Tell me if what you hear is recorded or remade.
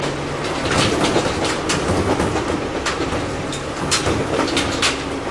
recorded